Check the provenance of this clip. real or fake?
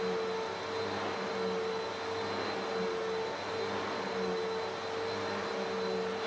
real